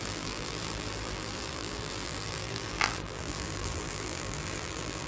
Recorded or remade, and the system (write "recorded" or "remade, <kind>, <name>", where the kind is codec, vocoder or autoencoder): remade, vocoder, BigVGAN v2